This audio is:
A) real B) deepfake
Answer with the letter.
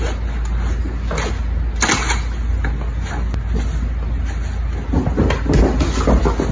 A